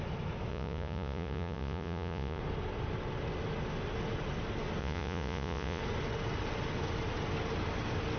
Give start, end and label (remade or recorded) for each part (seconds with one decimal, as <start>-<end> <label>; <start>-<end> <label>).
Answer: 0.0-0.5 recorded; 0.5-2.4 remade; 2.4-4.8 recorded; 4.8-5.8 remade; 5.8-8.2 recorded